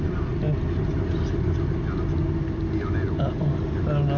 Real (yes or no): yes